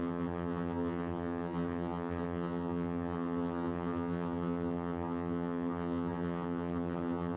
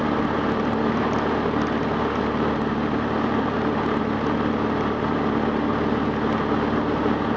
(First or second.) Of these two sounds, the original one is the second